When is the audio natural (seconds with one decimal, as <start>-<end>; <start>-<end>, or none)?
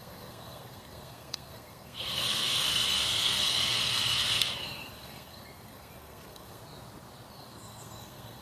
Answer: 6.6-7.3